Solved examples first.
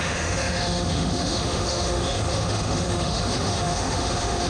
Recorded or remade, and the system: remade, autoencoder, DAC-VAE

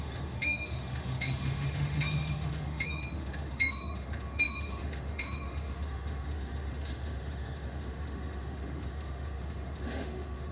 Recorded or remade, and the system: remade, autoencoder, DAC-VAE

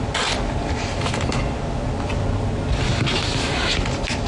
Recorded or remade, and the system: recorded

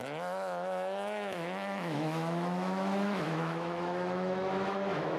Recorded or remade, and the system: remade, autoencoder, DAC-VAE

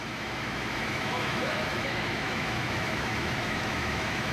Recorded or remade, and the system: remade, autoencoder, DAC-VAE